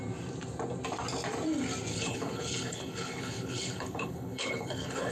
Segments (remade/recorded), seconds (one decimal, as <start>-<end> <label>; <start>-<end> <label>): 0.0-1.9 recorded; 1.9-5.1 remade